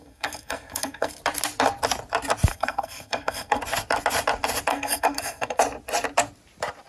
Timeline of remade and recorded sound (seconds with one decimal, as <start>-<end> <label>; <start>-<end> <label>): 0.0-1.1 remade; 1.1-2.5 recorded; 2.5-3.6 remade; 3.6-4.7 recorded; 4.7-5.6 remade; 5.6-6.9 recorded